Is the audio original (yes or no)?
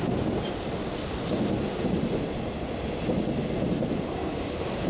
yes